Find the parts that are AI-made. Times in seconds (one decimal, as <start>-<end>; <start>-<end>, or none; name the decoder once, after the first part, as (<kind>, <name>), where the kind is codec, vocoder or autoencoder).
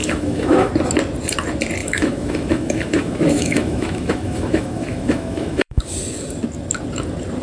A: 0.0-0.7 (autoencoder, DAC-VAE); 1.8-5.8